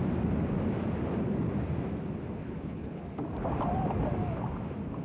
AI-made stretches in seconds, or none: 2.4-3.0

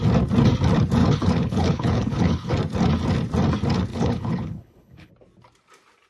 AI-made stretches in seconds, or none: 1.0-2.5; 3.9-5.1